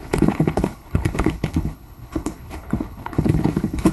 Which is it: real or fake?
fake